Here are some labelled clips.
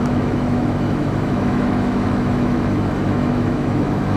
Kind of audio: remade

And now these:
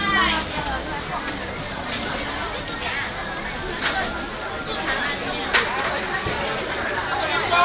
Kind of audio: recorded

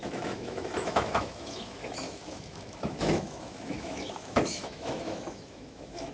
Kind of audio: remade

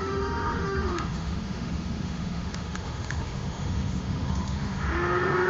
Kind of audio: remade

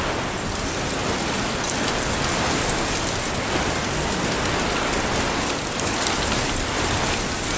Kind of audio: recorded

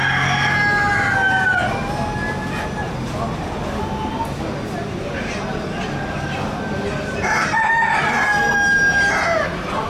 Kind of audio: recorded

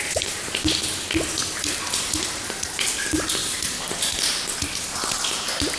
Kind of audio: recorded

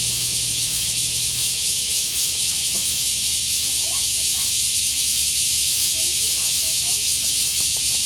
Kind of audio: remade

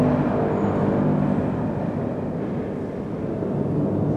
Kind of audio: recorded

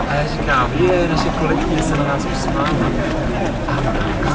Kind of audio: recorded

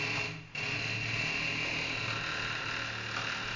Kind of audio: recorded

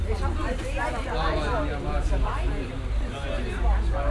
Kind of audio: recorded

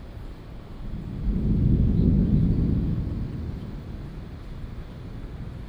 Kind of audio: recorded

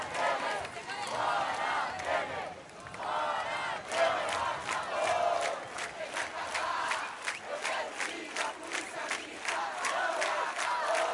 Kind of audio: recorded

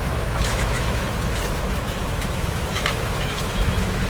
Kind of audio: remade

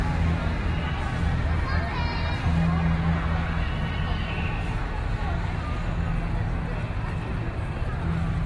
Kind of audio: recorded